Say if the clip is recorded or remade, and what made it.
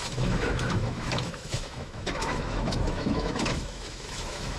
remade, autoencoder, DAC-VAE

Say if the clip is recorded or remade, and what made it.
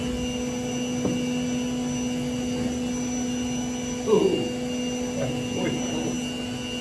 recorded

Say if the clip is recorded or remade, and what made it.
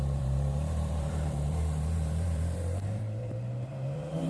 remade, vocoder, BigVGAN v2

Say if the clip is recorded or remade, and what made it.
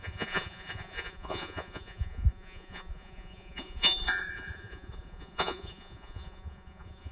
remade, vocoder, Vocos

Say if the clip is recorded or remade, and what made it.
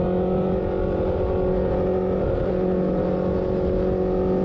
recorded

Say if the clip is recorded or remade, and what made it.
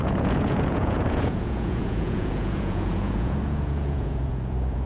remade, vocoder, Vocos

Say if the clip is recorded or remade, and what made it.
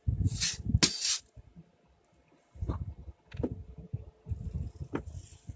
recorded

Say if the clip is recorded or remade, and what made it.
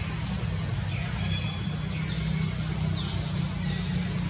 recorded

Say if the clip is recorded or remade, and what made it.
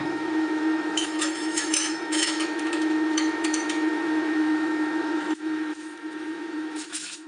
remade, autoencoder, DAC-VAE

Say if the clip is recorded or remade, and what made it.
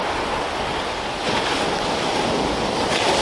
recorded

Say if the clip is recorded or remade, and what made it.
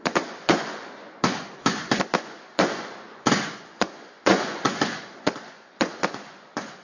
remade, vocoder, Vocos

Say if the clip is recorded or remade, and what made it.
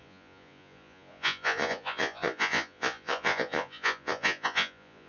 remade, vocoder, Vocos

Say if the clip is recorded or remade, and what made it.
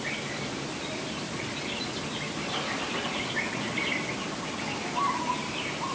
recorded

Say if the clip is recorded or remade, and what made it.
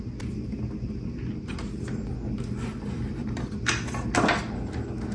recorded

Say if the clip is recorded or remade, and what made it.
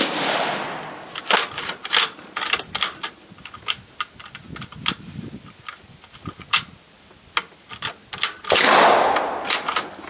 recorded